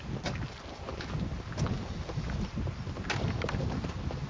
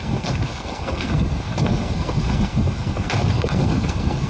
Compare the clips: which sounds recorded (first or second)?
first